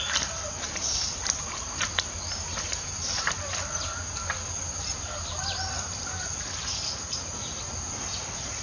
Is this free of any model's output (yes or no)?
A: yes